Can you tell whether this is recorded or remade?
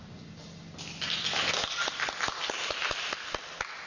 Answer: recorded